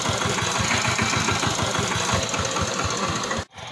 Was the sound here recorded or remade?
recorded